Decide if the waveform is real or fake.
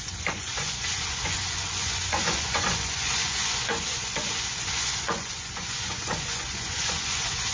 fake